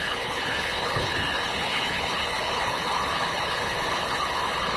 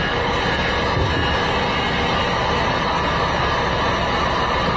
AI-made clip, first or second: first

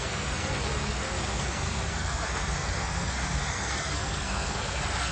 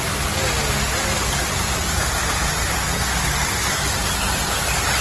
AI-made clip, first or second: first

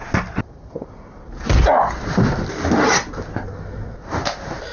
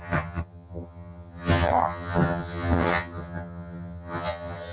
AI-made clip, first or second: second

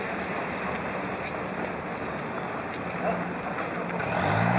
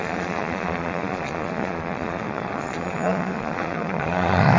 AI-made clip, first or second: second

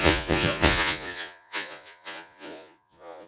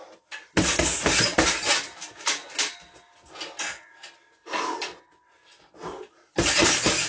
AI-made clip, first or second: first